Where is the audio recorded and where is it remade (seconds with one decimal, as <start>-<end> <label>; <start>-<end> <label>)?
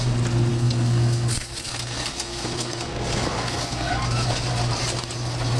0.0-0.5 recorded; 0.5-3.9 remade; 3.9-5.6 recorded